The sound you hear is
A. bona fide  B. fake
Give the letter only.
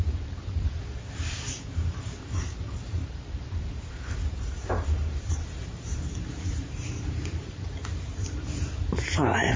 B